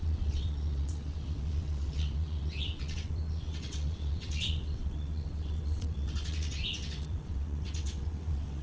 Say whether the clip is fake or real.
fake